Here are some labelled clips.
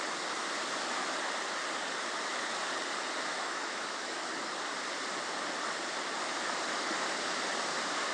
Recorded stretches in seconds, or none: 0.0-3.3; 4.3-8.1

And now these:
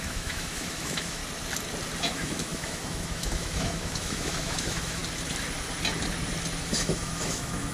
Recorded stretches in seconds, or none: 1.2-2.0; 5.0-6.6

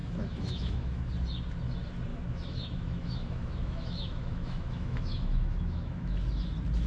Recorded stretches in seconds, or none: 1.1-2.1; 6.2-6.9

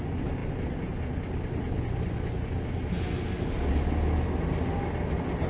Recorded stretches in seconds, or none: 0.0-5.5

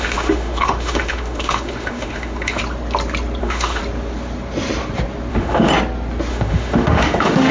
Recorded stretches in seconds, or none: 2.6-3.4; 3.8-5.3; 5.7-6.3

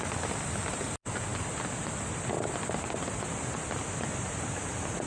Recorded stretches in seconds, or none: 0.0-5.1